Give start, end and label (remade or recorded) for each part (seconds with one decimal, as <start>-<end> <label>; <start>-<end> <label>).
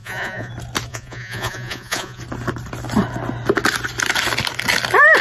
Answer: 0.0-0.5 remade; 0.5-0.9 recorded; 0.9-2.2 remade; 2.2-5.2 recorded